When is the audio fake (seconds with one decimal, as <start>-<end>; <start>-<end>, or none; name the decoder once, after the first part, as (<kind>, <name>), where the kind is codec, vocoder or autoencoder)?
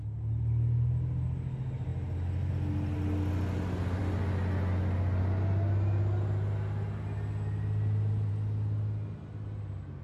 none